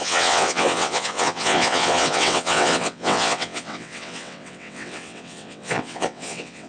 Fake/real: fake